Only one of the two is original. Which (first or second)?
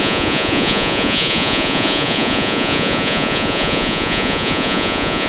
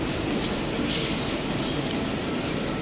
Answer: second